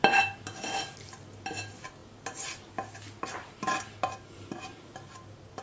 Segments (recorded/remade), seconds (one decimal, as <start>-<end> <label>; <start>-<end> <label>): 0.0-5.6 recorded